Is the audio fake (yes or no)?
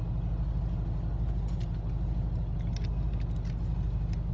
no